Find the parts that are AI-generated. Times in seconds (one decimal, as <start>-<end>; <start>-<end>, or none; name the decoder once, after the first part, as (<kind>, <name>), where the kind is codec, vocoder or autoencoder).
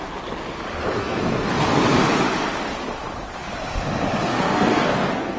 1.0-1.5 (codec, SNAC); 4.3-5.4